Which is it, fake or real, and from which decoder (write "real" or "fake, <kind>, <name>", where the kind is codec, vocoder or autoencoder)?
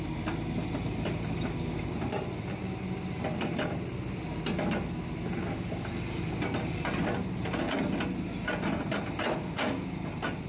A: real